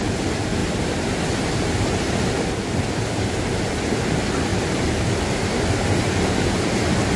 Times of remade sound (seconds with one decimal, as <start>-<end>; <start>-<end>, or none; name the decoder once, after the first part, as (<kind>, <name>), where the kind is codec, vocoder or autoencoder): 4.5-5.2 (vocoder, BigVGAN v2)